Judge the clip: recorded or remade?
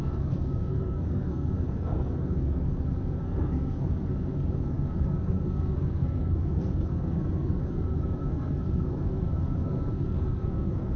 remade